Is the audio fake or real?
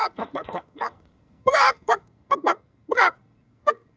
fake